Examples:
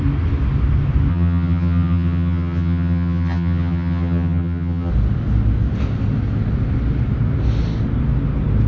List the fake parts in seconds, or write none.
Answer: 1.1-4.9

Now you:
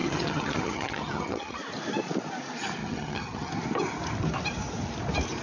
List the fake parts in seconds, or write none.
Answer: 0.0-1.6; 2.8-3.5

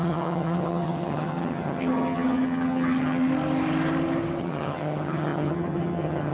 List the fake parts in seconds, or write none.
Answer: 0.0-3.3; 4.4-6.3

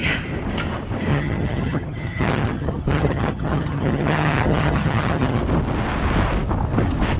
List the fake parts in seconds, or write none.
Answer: 1.1-5.4

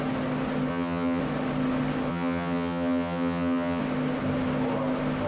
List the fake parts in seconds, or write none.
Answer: 0.7-1.2; 2.1-3.8

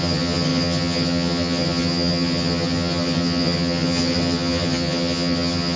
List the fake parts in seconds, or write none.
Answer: 0.0-5.8

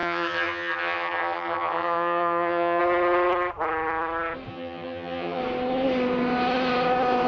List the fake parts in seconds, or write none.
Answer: 0.0-2.8; 4.5-5.4

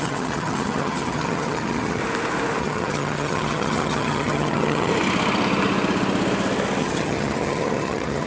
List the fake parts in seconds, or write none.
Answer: 0.0-2.0; 2.6-4.9; 6.8-8.3